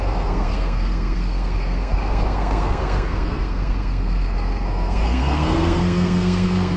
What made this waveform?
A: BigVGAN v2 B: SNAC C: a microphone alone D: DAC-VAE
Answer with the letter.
B